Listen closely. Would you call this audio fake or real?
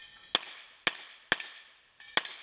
real